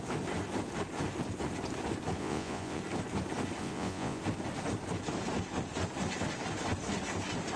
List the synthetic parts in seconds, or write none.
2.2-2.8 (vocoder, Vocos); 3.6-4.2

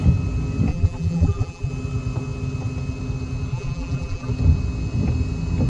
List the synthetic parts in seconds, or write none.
0.7-1.7 (vocoder, BigVGAN v2); 3.5-4.3

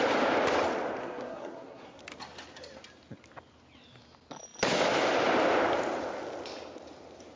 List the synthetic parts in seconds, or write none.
1.0-2.0 (codec, SNAC)

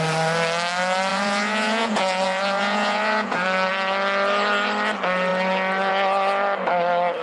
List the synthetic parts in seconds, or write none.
1.1-3.7 (vocoder, Vocos)